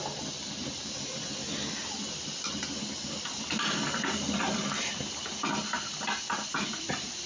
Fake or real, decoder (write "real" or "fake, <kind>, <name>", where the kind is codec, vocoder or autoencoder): real